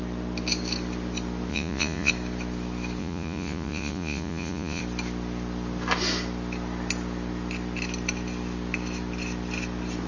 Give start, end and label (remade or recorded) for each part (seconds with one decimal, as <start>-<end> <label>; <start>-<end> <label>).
0.0-1.5 recorded; 1.5-2.1 remade; 2.1-3.0 recorded; 3.0-4.8 remade; 4.8-10.1 recorded